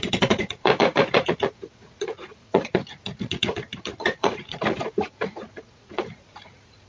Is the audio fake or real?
fake